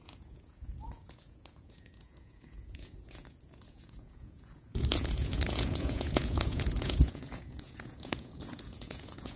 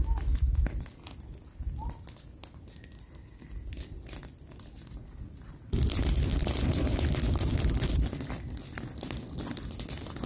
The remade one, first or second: first